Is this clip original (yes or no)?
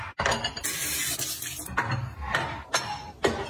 yes